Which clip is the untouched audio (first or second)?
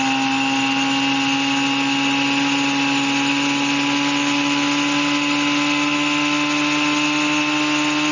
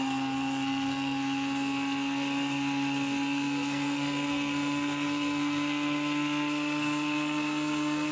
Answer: first